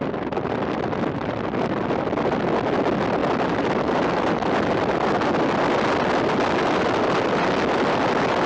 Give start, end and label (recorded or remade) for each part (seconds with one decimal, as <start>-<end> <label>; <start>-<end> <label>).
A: 0.0-8.5 recorded